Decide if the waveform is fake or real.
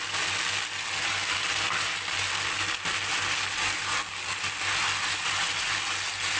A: real